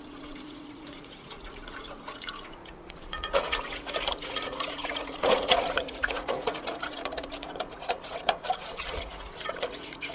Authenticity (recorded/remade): remade